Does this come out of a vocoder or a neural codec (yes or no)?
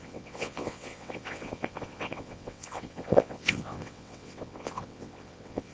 yes